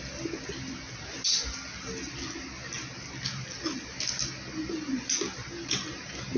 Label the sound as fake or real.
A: real